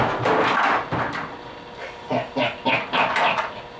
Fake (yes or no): no